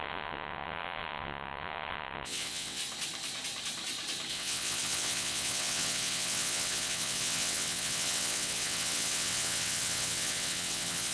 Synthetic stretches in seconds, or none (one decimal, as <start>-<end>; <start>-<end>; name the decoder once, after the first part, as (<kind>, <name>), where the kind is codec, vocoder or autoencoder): 0.0-2.8 (vocoder, WaveNeXt); 4.3-11.1